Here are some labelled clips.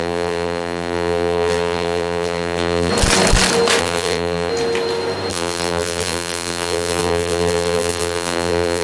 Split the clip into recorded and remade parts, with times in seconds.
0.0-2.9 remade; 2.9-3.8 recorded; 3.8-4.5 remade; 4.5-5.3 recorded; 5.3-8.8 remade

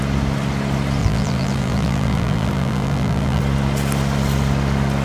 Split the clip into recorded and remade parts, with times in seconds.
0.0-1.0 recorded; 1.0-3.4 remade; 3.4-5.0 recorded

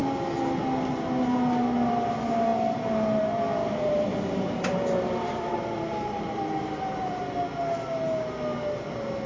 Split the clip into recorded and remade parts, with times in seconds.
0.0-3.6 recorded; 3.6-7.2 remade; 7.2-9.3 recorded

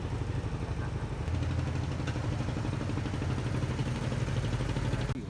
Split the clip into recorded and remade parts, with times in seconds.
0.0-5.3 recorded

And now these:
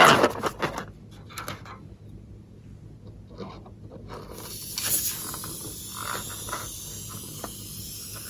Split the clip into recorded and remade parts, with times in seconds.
0.0-8.3 recorded

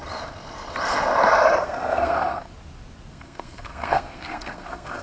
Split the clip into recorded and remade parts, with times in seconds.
0.0-1.6 recorded; 1.6-2.5 remade; 2.5-3.1 recorded; 3.1-5.0 remade

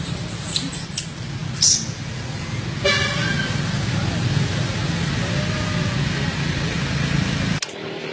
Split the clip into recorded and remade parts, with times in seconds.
0.0-8.1 recorded